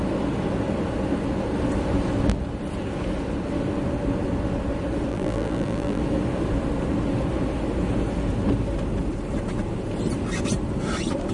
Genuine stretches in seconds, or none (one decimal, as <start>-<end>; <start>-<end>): 0.0-5.1; 6.0-11.3